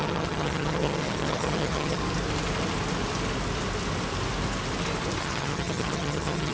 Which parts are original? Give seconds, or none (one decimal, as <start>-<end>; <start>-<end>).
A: 2.0-5.2